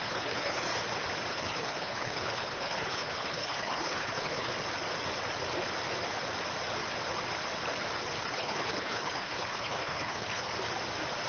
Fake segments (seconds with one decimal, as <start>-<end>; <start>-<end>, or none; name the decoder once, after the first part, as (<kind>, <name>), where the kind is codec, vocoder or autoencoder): 0.0-0.7 (codec, HILCodec); 1.3-4.5; 8.3-10.5